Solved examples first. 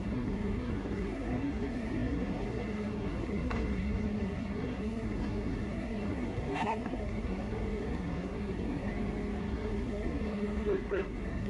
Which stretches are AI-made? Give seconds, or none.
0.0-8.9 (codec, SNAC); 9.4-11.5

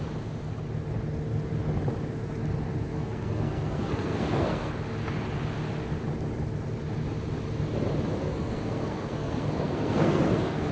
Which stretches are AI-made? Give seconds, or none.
2.9-4.7 (codec, SNAC); 8.2-10.7

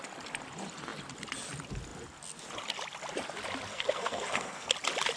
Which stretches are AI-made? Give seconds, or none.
3.7-4.7 (codec, SNAC)

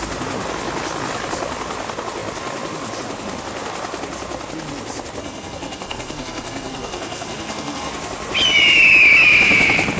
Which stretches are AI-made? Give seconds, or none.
5.2-7.9 (codec, SNAC)